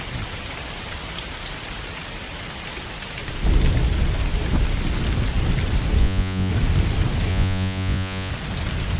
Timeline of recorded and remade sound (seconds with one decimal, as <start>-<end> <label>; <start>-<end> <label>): 0.0-6.0 recorded; 6.0-6.5 remade; 6.5-7.3 recorded; 7.3-8.3 remade; 8.3-9.0 recorded